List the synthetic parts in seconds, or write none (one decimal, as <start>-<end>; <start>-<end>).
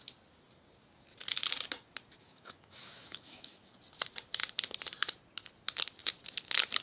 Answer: 2.2-3.7